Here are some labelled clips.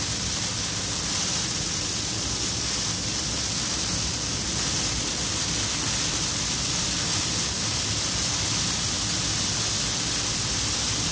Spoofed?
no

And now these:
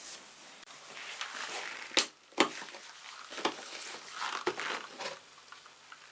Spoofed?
no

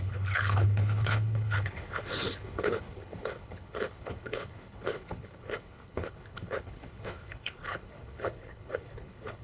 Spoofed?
yes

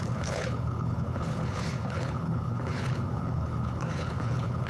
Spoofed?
yes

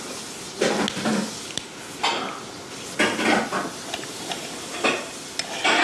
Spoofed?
no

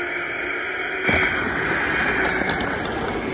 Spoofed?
no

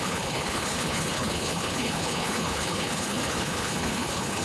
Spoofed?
yes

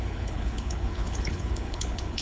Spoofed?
yes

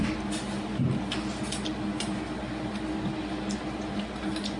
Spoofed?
no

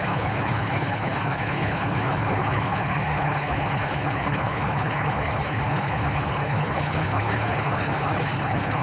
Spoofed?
yes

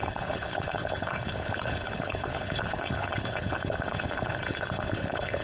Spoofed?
yes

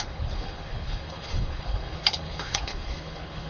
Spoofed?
yes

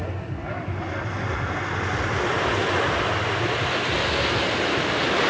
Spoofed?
no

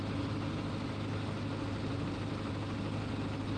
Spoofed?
no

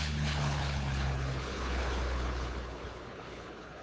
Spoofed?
yes